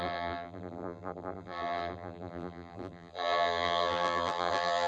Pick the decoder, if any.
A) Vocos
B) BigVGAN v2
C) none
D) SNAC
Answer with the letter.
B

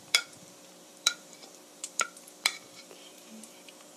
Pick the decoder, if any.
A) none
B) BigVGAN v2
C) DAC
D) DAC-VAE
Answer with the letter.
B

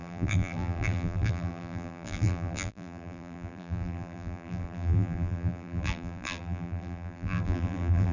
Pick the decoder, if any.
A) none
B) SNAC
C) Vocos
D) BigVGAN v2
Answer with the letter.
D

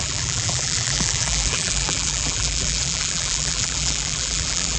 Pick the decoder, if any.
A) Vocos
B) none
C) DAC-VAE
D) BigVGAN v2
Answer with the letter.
D